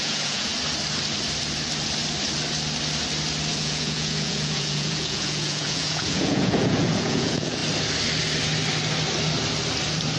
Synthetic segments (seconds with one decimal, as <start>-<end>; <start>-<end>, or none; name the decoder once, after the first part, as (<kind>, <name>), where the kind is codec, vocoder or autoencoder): 0.0-0.5 (vocoder, Vocos); 3.5-7.6